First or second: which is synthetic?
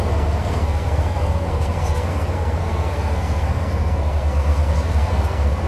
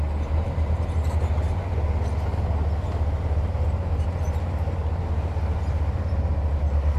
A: first